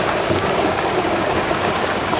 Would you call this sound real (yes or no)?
no